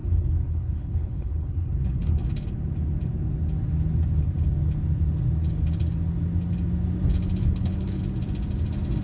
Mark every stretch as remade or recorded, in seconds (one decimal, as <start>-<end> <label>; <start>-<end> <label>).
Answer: 0.0-2.3 remade; 2.3-7.4 recorded; 7.4-8.0 remade; 8.0-9.0 recorded